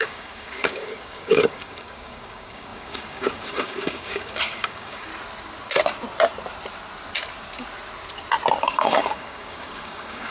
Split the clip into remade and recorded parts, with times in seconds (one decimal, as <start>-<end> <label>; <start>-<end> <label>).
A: 0.0-5.1 remade; 5.1-8.6 recorded; 8.6-10.3 remade